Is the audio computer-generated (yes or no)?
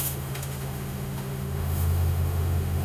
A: yes